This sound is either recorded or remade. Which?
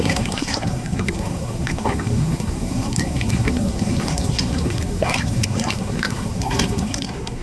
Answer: remade